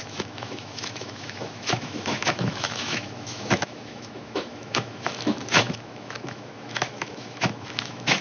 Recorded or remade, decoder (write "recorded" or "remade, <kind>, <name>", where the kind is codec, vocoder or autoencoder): remade, autoencoder, DAC-VAE